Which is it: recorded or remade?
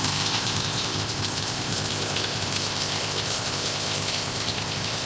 remade